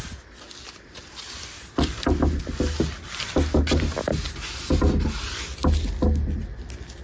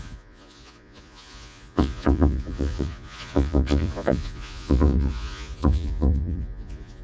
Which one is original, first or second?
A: first